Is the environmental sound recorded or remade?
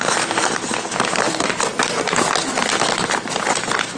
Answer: recorded